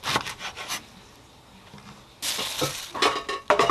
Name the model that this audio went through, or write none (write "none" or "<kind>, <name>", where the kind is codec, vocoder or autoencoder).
none